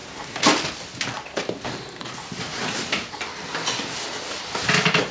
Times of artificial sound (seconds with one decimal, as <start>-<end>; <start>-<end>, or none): none